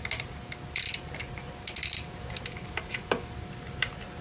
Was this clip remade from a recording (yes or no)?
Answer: no